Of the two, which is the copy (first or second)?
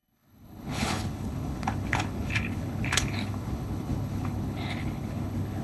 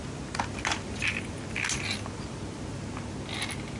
first